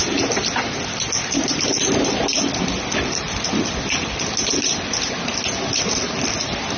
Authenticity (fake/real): real